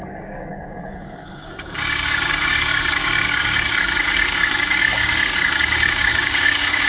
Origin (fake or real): fake